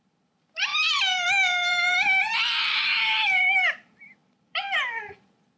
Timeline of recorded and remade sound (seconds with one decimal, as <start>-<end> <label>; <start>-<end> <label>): 0.0-0.7 recorded; 0.7-2.4 remade; 2.4-4.2 recorded; 4.2-5.0 remade; 5.0-5.6 recorded